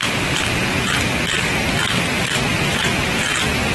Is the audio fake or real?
fake